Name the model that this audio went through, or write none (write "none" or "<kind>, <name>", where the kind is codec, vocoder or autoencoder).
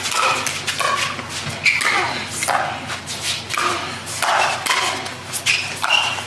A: none